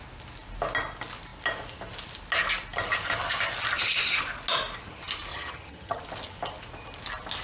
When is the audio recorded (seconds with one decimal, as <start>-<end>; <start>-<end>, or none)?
0.0-5.3; 6.0-7.4